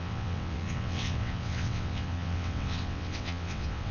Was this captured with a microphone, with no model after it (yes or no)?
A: no